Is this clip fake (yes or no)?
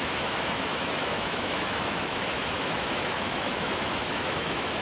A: yes